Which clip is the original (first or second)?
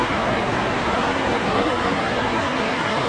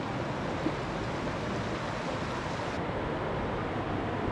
second